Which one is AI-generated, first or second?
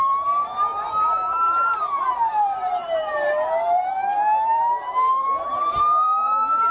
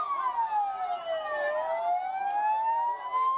first